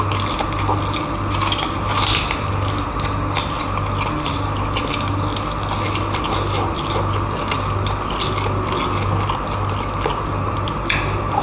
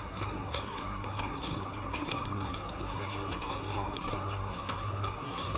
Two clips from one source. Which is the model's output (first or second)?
second